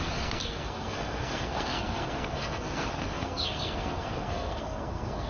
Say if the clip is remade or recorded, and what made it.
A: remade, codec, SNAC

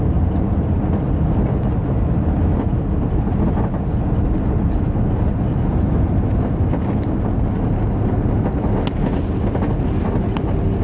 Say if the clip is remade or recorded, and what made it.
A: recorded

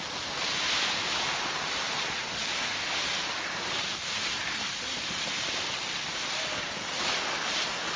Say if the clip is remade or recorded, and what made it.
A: recorded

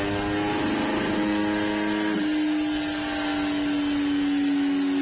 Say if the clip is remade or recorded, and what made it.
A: recorded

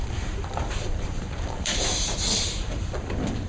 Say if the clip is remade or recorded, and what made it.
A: remade, vocoder, BigVGAN v2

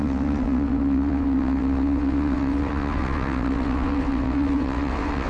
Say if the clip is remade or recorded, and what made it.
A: remade, vocoder, WaveNeXt